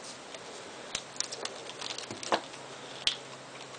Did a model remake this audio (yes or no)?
no